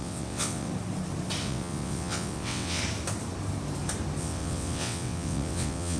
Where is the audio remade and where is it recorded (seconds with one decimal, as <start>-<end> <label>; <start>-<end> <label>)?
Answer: 0.0-0.7 remade; 0.7-1.4 recorded; 1.4-2.8 remade; 2.8-4.2 recorded; 4.2-6.0 remade